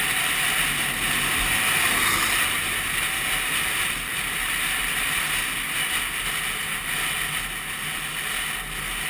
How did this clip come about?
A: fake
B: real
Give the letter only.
B